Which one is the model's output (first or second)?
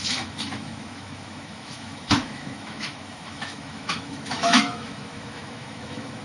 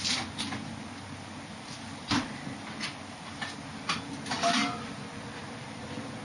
first